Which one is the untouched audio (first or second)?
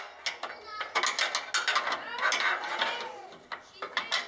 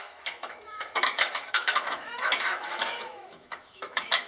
first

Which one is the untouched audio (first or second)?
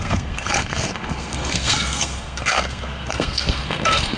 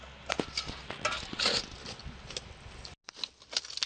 second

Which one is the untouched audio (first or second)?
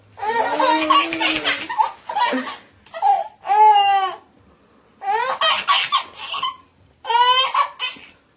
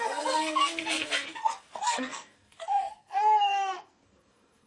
first